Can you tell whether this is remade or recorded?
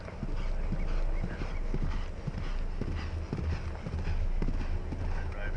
recorded